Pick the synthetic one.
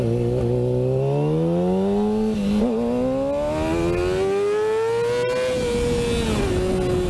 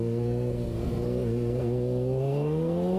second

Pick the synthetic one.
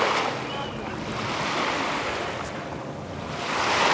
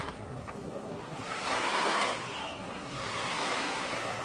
second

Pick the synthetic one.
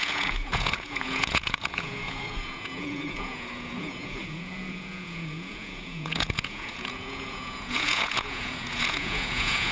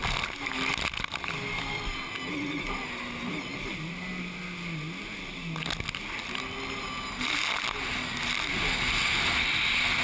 first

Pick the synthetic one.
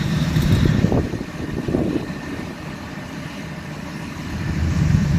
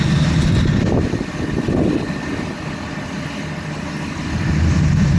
first